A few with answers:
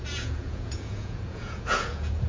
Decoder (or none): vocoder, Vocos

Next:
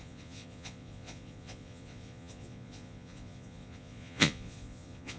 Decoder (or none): vocoder, Vocos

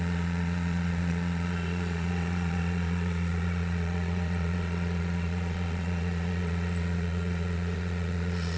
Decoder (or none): vocoder, Vocos